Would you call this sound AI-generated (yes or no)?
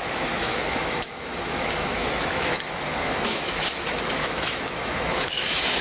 yes